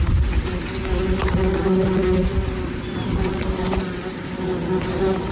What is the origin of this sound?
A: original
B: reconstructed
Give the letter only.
A